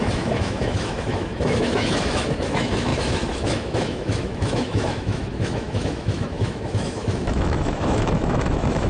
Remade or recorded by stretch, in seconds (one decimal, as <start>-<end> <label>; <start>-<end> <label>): 0.0-8.9 remade